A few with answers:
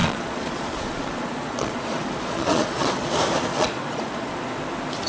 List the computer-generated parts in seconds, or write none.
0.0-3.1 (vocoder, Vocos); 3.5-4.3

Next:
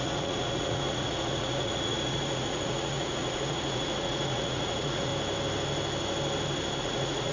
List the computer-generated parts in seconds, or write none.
0.0-5.1 (vocoder, Vocos); 6.8-7.3